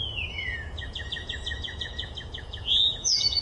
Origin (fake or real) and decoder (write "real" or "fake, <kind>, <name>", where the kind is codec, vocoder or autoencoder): fake, vocoder, Vocos